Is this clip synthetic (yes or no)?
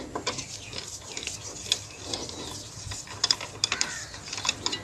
no